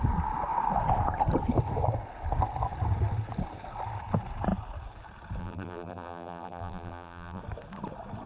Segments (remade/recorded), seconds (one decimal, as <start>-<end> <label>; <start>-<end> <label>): 0.0-5.4 recorded; 5.4-7.4 remade; 7.4-8.3 recorded